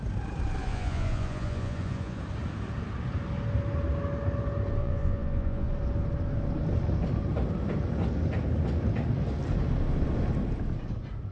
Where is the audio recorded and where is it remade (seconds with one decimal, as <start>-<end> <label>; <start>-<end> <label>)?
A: 0.0-0.6 recorded; 0.6-2.2 remade; 2.2-4.8 recorded; 4.8-5.7 remade; 5.7-11.3 recorded